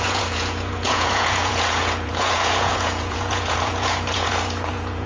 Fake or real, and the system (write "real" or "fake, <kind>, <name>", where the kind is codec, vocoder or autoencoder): fake, vocoder, Vocos